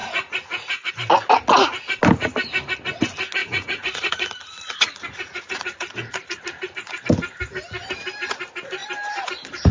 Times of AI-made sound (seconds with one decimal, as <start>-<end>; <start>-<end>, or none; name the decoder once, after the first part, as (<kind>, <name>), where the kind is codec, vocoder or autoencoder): 0.0-0.9 (vocoder, Vocos); 3.4-7.0